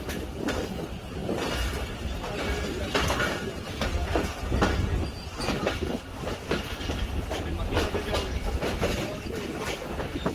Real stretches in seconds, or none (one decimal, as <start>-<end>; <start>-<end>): 0.0-10.3

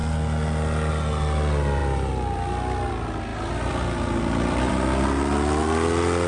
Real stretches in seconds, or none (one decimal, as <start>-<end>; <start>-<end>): 0.0-6.3

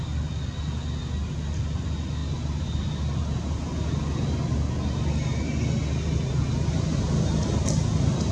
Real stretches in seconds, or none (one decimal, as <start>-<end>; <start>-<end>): 0.0-8.3